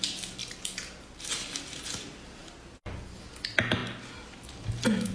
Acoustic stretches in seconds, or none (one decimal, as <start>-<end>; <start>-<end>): 0.0-5.1